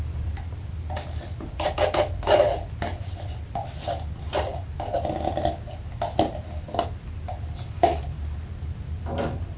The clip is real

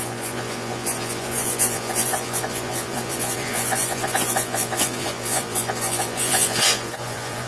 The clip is fake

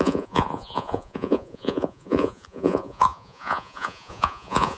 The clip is fake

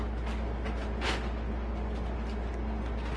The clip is real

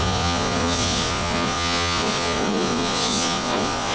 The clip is fake